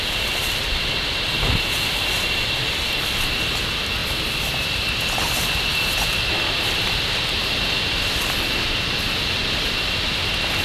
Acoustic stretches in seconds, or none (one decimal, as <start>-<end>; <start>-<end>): 0.0-10.6